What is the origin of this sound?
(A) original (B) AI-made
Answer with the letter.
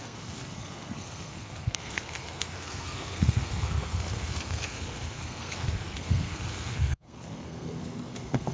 B